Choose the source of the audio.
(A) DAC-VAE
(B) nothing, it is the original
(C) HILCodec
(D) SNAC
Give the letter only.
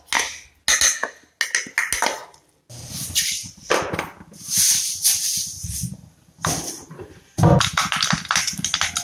B